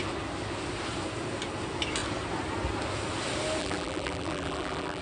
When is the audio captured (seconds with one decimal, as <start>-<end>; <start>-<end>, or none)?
0.0-3.6